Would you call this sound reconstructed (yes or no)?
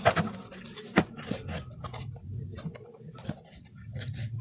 yes